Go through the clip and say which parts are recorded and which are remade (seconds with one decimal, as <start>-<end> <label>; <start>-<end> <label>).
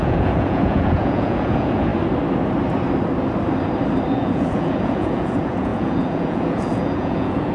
0.0-1.9 remade; 1.9-4.1 recorded; 4.1-7.5 remade